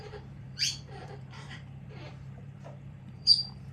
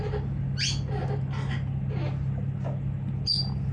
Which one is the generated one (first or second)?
first